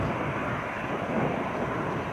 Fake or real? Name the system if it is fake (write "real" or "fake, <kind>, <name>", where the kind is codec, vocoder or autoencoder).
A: real